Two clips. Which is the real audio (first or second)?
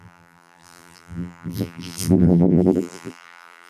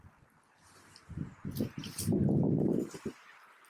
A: second